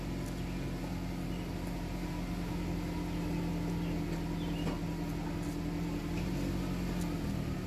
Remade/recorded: recorded